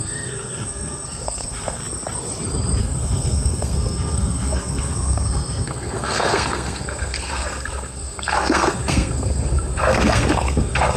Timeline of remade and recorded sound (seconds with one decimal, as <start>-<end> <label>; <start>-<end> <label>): 0.0-1.8 remade; 1.8-2.8 recorded; 2.8-11.0 remade